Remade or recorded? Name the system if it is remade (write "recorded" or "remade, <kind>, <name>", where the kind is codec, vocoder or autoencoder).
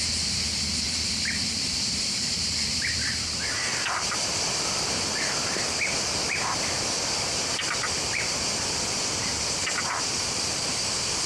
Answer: remade, vocoder, BigVGAN v2